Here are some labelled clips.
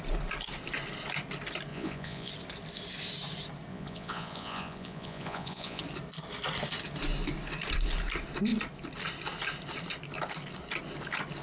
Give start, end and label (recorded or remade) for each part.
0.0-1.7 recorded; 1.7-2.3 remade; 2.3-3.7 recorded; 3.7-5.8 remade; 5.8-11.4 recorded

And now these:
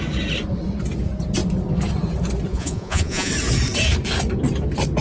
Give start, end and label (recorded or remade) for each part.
0.0-2.5 recorded; 2.5-3.3 remade; 3.3-5.0 recorded